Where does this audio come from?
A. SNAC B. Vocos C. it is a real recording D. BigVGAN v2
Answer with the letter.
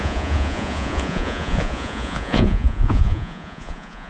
B